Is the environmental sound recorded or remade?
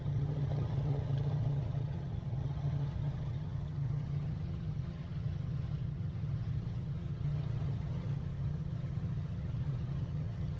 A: remade